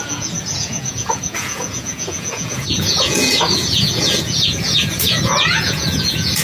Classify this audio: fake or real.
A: fake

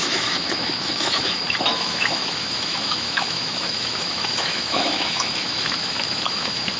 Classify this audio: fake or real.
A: fake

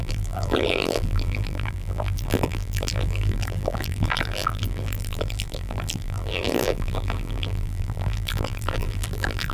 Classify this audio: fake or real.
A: fake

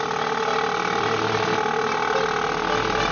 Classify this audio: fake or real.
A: real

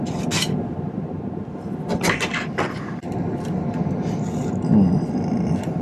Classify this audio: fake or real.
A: fake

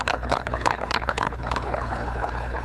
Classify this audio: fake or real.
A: fake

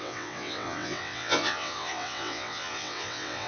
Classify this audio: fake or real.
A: fake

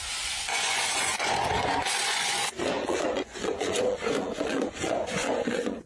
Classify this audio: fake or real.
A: fake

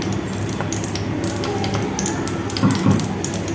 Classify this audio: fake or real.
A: real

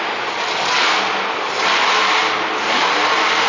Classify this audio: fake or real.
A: real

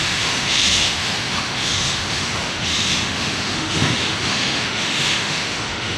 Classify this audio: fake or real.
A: fake